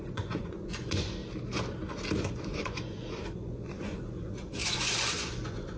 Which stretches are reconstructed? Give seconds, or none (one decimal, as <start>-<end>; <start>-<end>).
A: 0.0-1.2; 2.2-5.8